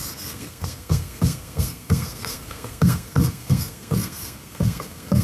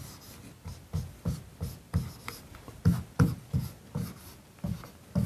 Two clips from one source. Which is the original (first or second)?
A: second